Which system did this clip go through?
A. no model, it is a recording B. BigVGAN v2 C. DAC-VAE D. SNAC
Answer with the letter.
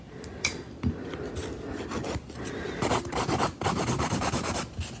A